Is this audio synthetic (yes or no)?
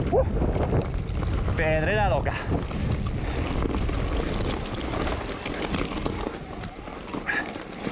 no